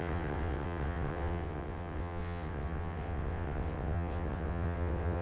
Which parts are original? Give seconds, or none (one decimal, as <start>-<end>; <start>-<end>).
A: none